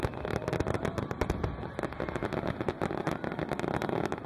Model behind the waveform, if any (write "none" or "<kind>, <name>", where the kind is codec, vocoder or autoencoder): none